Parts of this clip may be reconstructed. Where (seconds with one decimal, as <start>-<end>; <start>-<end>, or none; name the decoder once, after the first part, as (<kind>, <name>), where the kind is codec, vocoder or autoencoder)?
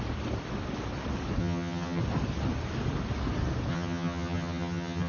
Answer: 1.4-2.0 (vocoder, HiFi-GAN); 3.7-5.1